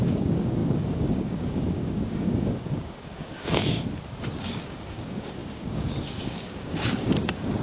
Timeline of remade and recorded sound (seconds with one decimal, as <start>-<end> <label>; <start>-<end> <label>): 0.0-3.6 remade; 3.6-4.4 recorded; 4.4-7.6 remade